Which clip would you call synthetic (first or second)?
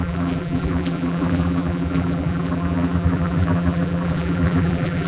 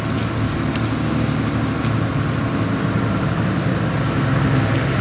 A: first